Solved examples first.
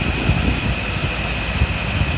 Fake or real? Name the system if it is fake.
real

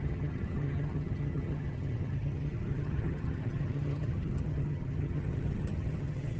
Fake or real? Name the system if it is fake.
fake, vocoder, HiFi-GAN